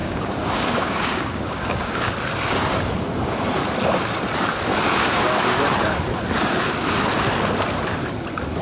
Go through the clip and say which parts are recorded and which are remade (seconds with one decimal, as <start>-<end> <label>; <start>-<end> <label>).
0.0-2.1 remade; 2.1-8.6 recorded